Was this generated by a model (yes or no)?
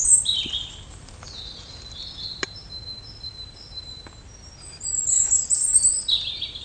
yes